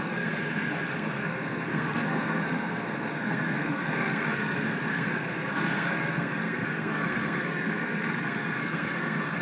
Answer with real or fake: fake